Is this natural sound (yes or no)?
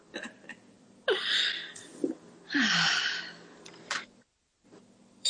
no